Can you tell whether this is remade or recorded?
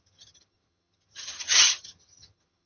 remade